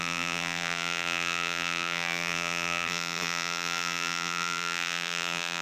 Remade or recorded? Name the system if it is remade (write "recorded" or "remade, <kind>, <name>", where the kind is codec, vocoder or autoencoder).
remade, vocoder, BigVGAN v2